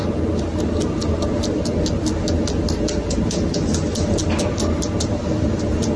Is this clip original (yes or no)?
yes